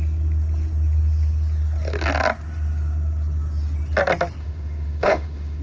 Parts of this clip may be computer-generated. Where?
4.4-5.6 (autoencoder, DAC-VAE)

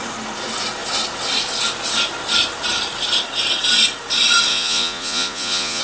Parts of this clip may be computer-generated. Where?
4.5-5.8 (vocoder, Vocos)

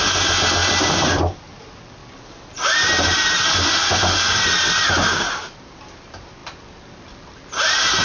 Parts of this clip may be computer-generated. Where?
none

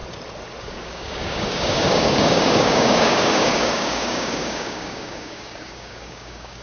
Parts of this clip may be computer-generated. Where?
0.6-6.6 (codec, DAC)

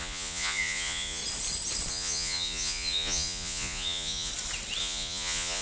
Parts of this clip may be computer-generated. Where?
0.0-1.2 (vocoder, Vocos); 1.9-4.3; 4.8-5.6